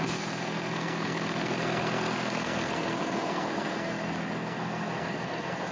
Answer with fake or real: fake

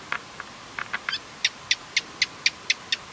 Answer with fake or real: real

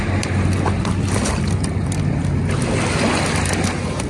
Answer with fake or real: real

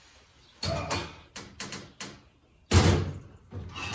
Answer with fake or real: real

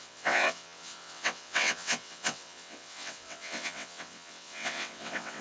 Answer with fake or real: fake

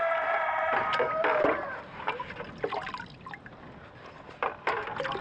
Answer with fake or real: real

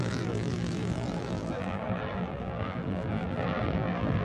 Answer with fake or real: fake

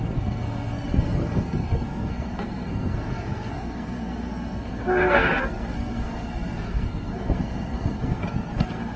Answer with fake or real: fake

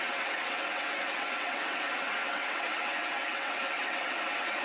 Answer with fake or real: fake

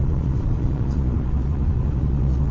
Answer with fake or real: fake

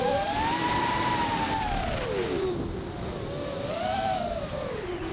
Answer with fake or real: fake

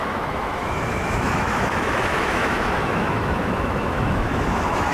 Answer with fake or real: fake